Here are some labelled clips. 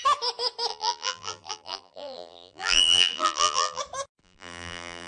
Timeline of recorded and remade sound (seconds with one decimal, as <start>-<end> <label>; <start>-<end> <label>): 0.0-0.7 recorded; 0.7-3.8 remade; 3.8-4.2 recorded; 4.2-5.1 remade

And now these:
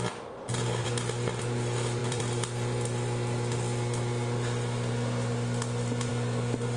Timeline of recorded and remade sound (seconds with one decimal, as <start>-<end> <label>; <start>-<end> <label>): 0.0-0.8 recorded; 0.8-1.4 remade; 1.4-2.0 recorded; 2.0-6.1 remade; 6.1-6.8 recorded

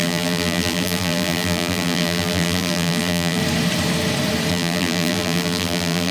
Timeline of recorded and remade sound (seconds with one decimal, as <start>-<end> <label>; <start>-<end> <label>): 0.0-3.4 remade; 3.4-4.5 recorded; 4.5-6.1 remade

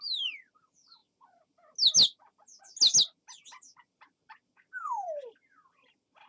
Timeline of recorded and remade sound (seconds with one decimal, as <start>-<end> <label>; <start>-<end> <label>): 0.0-6.3 recorded

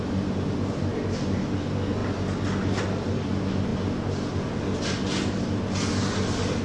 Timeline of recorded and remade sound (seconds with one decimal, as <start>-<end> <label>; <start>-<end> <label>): 0.0-6.6 recorded

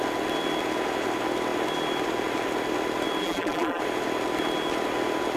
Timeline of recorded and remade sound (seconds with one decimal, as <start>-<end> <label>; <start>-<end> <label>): 0.0-3.2 recorded; 3.2-3.8 remade; 3.8-5.4 recorded

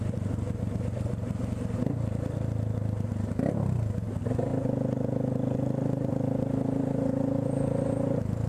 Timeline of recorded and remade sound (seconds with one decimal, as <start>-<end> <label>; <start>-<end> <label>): 0.0-8.5 recorded

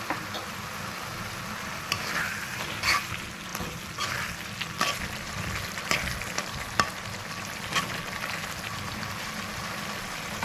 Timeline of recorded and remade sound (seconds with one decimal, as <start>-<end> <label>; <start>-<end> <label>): 0.0-10.4 recorded